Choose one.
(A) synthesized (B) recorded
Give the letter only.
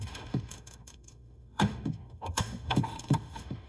A